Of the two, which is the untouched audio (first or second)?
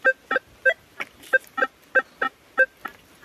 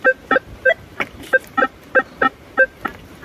first